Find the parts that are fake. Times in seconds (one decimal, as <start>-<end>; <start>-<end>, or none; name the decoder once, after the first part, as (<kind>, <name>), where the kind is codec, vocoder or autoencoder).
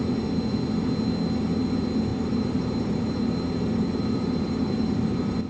2.1-5.5 (vocoder, BigVGAN v2)